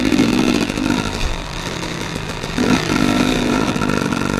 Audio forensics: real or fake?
fake